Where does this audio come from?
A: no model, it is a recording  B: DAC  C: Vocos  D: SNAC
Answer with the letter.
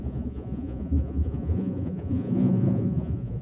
C